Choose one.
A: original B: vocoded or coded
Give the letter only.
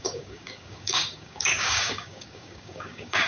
B